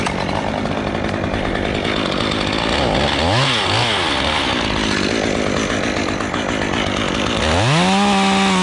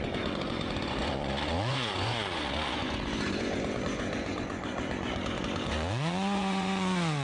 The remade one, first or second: second